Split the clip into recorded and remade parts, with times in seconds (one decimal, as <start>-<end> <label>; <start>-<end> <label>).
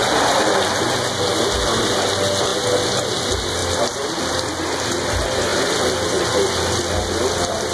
0.0-7.7 recorded